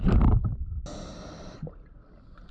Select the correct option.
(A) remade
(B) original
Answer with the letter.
B